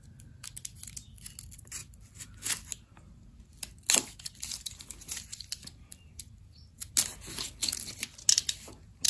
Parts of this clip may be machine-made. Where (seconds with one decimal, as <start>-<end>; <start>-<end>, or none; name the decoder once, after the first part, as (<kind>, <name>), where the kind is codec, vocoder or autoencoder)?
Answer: none